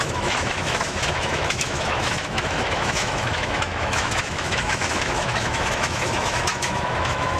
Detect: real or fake fake